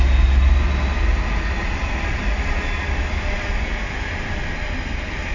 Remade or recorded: recorded